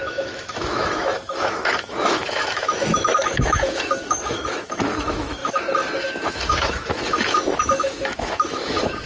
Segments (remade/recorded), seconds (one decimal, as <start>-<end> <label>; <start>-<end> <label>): 0.0-9.1 remade